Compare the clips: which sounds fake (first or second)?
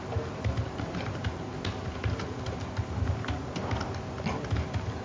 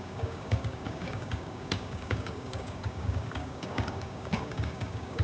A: second